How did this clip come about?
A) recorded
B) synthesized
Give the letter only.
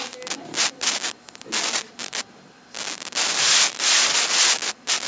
A